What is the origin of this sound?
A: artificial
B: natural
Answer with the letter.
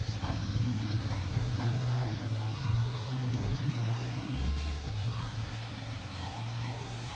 A